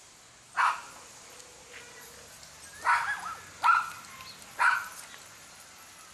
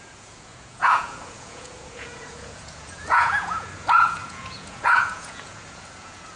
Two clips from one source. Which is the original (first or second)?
first